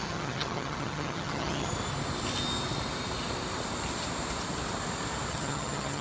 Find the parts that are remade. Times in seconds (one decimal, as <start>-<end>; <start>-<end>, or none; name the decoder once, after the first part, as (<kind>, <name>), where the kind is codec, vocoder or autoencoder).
0.0-1.7 (vocoder, HiFi-GAN); 5.3-6.0

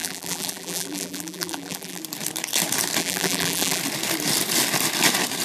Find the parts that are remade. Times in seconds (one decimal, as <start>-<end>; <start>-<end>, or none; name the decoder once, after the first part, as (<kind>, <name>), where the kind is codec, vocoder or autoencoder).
0.0-2.0 (vocoder, BigVGAN v2); 3.0-3.8

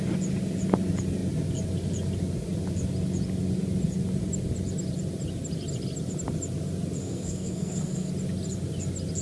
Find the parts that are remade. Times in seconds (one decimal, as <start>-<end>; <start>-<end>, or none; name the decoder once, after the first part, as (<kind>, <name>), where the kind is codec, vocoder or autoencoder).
7.0-8.1 (codec, SNAC)

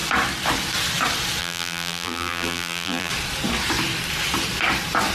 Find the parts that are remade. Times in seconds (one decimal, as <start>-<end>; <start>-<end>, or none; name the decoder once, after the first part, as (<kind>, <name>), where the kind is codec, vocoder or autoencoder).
1.4-3.1 (vocoder, BigVGAN v2)

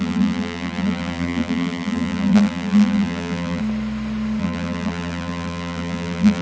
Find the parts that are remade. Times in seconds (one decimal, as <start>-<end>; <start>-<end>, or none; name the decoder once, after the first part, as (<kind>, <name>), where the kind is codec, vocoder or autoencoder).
0.0-3.6 (vocoder, BigVGAN v2); 4.4-6.4

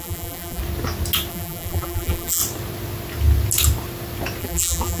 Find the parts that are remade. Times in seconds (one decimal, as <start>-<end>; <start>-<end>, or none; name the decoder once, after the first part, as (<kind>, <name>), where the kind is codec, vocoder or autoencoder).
0.0-0.6 (vocoder, BigVGAN v2); 1.3-2.4; 4.4-5.0

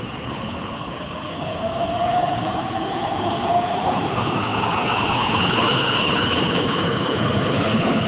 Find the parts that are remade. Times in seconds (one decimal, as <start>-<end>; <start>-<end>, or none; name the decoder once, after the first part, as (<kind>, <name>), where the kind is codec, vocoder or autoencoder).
0.0-8.1 (codec, HILCodec)

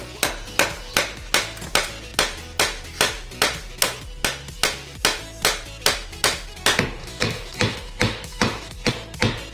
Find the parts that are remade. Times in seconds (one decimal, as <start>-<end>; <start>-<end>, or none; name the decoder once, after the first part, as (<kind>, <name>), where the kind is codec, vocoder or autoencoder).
7.0-8.9 (autoencoder, DAC-VAE)